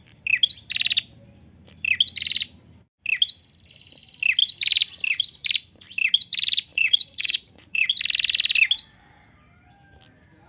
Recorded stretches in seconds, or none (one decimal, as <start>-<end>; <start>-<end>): 0.0-6.7; 7.9-10.5